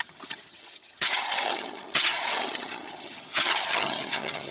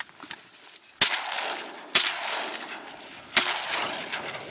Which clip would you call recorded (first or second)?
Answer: second